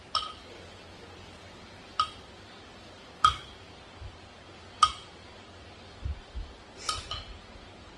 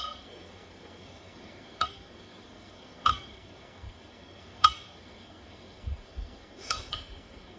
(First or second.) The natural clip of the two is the first